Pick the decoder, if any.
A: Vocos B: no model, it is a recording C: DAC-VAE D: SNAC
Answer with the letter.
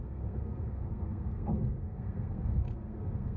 D